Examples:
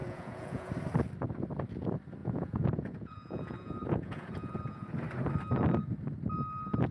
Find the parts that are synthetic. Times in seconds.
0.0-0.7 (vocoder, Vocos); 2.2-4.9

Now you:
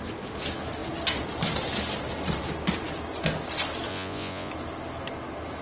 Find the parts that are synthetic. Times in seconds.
3.9-4.5 (vocoder, Vocos)

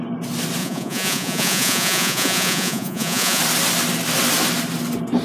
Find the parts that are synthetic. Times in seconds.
0.6-3.4 (vocoder, Vocos)

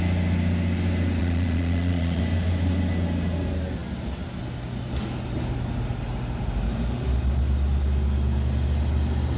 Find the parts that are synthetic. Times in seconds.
1.2-2.2 (vocoder, Vocos)